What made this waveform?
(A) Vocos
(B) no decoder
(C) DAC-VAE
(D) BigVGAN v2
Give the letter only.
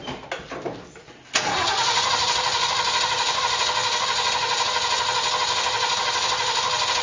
B